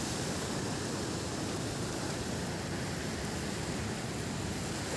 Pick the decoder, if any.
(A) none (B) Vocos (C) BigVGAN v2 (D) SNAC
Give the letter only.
A